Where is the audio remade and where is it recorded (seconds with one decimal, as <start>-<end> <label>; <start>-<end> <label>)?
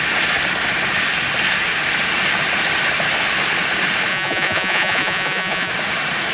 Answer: 0.0-4.1 recorded; 4.1-5.7 remade; 5.7-6.3 recorded